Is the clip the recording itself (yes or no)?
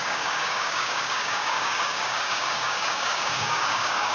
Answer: no